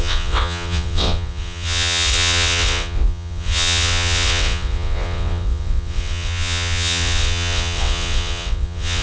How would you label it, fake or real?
fake